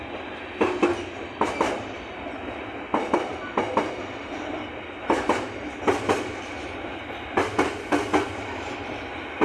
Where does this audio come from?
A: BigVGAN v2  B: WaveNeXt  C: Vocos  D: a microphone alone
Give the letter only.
D